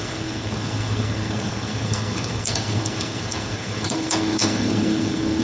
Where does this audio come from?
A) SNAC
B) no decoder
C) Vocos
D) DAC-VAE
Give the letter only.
A